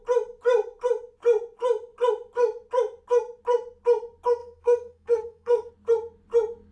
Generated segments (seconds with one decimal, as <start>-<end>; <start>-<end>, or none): 4.4-5.7